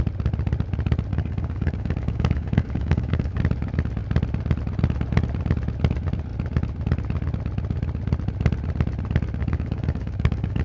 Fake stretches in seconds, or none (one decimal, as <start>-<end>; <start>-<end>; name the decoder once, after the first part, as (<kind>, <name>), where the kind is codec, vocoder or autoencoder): 1.1-3.4 (codec, DAC); 9.4-10.6